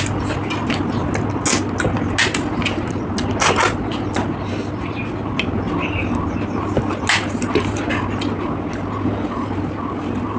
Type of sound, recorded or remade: recorded